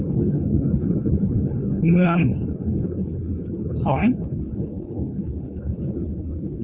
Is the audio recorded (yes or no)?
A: no